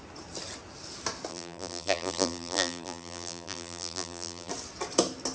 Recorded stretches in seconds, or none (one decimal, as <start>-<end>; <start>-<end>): 0.0-1.3; 4.5-5.3